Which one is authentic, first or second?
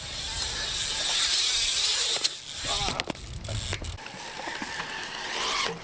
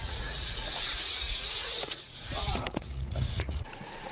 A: first